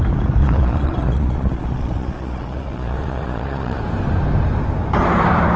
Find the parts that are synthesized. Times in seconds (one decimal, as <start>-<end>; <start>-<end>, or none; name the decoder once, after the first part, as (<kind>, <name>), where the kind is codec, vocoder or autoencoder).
0.4-3.8 (vocoder, Vocos)